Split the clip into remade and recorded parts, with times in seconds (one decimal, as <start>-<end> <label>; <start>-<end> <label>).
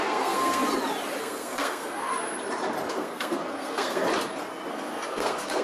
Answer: 0.0-0.6 remade; 0.6-1.2 recorded; 1.2-2.1 remade; 2.1-2.9 recorded; 2.9-4.0 remade; 4.0-4.7 recorded; 4.7-5.6 remade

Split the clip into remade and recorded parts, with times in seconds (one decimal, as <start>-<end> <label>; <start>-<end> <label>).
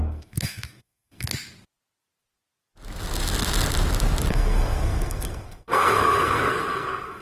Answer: 0.0-1.3 remade; 1.3-4.3 recorded; 4.3-7.2 remade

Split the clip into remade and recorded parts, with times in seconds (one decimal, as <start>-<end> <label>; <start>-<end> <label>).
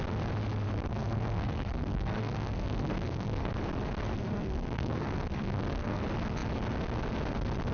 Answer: 0.0-0.9 recorded; 0.9-3.5 remade; 3.5-4.1 recorded; 4.1-6.0 remade; 6.0-7.7 recorded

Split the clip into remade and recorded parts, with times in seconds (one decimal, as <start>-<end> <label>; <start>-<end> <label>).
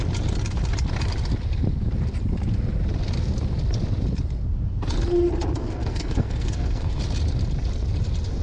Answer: 0.0-5.6 recorded; 5.6-7.0 remade; 7.0-8.4 recorded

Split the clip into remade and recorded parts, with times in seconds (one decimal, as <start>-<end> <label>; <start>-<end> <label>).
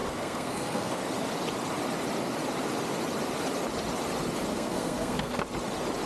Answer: 0.0-1.0 remade; 1.0-4.5 recorded; 4.5-5.4 remade; 5.4-6.1 recorded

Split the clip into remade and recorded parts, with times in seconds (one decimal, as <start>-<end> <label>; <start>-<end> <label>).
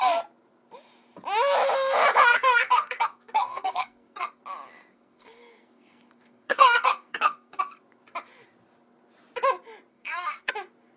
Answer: 0.0-2.3 recorded; 2.3-4.4 remade; 4.4-4.9 recorded; 4.9-7.6 remade; 7.6-9.9 recorded; 9.9-10.5 remade; 10.5-11.0 recorded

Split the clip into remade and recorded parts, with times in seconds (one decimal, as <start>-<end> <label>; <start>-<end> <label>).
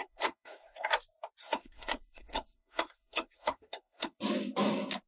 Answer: 0.0-0.9 remade; 0.9-1.4 recorded; 1.4-4.2 remade; 4.2-5.1 recorded